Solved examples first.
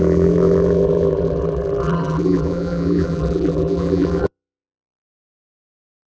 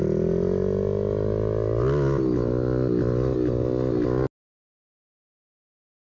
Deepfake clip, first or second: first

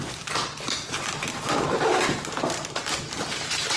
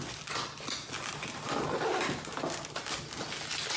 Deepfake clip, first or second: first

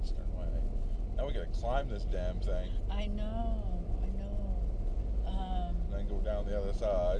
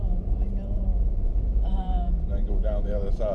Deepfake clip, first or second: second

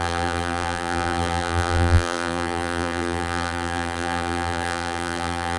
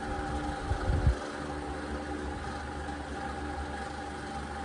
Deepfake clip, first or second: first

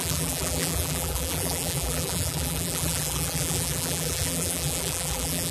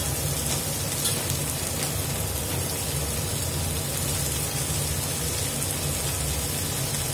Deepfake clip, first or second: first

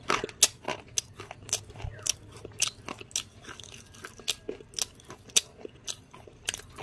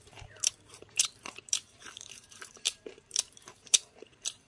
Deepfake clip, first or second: second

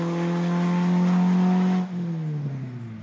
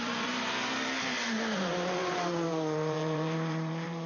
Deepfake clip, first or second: second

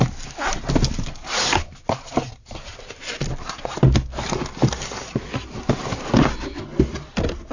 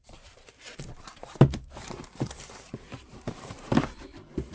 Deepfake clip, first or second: second